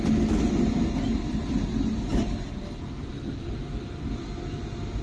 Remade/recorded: recorded